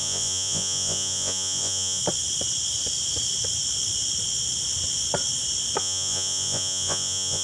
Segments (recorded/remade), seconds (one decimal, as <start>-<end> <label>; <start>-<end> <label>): 0.0-2.0 remade; 2.0-5.8 recorded; 5.8-7.4 remade